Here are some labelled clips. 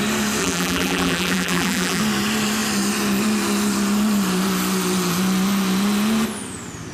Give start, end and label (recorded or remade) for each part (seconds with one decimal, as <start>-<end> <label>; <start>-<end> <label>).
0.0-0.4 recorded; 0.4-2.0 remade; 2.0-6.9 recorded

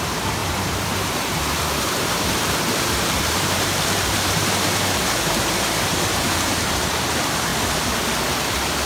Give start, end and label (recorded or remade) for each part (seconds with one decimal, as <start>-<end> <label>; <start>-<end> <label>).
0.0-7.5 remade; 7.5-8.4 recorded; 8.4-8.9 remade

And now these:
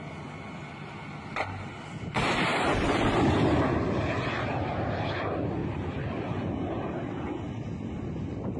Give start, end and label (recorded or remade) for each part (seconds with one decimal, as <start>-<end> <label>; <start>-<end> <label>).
0.0-5.6 recorded; 5.6-6.7 remade; 6.7-8.6 recorded

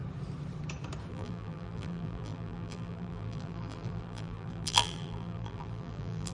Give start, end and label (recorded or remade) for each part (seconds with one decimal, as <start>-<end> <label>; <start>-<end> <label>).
0.0-1.1 recorded; 1.1-6.3 remade

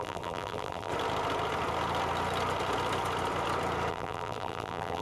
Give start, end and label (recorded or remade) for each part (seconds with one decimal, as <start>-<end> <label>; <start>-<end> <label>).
0.0-0.9 remade; 0.9-3.9 recorded; 3.9-5.0 remade

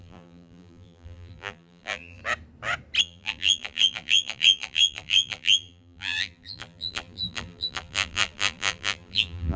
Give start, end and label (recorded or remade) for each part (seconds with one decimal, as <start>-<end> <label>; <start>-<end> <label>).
0.0-2.2 remade; 2.2-3.0 recorded; 3.0-9.6 remade

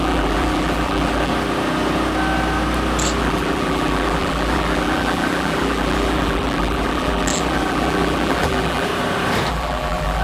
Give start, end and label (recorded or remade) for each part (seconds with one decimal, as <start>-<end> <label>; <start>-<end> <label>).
0.0-1.3 remade; 1.3-3.2 recorded; 3.2-8.9 remade; 8.9-9.5 recorded; 9.5-10.2 remade